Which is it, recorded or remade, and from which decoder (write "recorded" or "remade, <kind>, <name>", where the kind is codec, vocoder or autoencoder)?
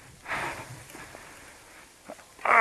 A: recorded